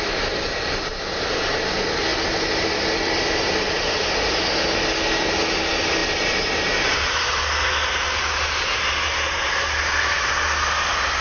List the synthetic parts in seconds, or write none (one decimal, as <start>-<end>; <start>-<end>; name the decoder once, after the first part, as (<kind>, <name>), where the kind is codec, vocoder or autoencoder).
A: none